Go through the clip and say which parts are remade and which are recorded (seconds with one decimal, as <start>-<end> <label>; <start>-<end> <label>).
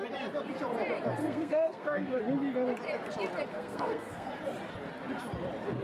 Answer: 0.0-1.2 recorded; 1.2-2.2 remade; 2.2-3.5 recorded; 3.5-4.3 remade; 4.3-5.8 recorded